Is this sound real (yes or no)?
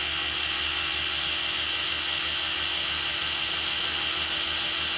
yes